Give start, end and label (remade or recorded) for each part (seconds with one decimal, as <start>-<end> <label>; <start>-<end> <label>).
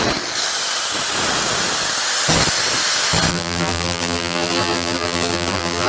0.0-3.3 recorded; 3.3-5.9 remade